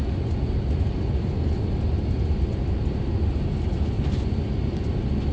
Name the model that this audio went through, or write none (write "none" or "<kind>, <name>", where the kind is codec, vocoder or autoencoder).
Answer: none